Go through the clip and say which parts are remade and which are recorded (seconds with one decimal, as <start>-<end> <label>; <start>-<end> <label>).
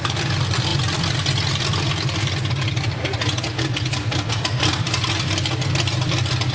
0.0-6.5 recorded